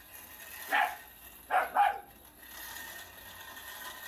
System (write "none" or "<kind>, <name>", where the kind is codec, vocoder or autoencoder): none